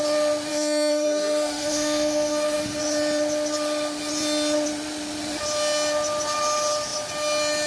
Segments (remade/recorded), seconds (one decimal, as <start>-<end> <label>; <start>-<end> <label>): 0.0-0.5 recorded; 0.5-2.8 remade; 2.8-7.7 recorded